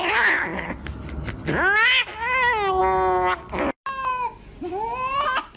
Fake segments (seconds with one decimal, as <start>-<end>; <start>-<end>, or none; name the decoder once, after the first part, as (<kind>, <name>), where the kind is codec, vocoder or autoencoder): none